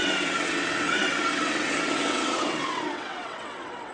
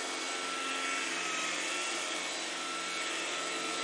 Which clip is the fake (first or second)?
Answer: first